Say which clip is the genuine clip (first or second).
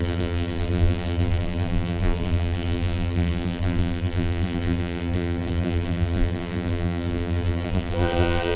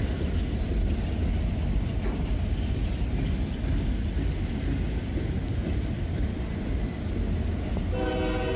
second